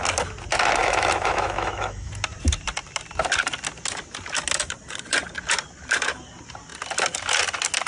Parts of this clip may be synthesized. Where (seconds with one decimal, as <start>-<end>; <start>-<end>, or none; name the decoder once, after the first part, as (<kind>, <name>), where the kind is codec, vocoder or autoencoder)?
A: 0.8-2.1 (autoencoder, DAC-VAE)

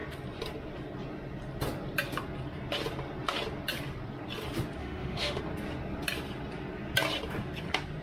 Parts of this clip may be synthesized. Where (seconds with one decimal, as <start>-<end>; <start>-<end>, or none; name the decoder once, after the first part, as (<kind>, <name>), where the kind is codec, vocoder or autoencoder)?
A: 4.8-5.4 (autoencoder, DAC-VAE)

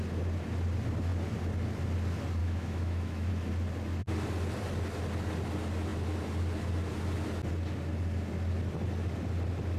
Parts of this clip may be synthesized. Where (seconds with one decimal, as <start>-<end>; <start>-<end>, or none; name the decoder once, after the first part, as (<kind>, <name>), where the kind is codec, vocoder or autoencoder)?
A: 2.4-3.3 (autoencoder, DAC-VAE)

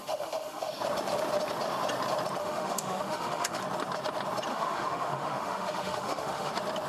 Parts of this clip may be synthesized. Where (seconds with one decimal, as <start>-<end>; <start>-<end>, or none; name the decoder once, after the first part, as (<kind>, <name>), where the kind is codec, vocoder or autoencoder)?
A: 0.0-0.7 (autoencoder, DAC-VAE); 2.4-3.6; 4.5-6.5